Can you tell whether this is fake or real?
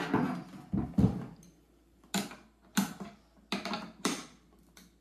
real